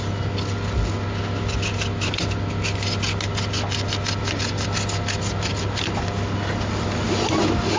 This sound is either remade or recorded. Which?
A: recorded